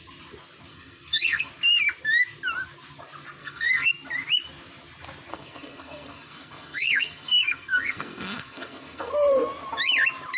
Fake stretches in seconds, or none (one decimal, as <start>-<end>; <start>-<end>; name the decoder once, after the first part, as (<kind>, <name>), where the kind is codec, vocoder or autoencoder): 0.7-1.5 (codec, SNAC); 3.4-3.9; 5.3-9.1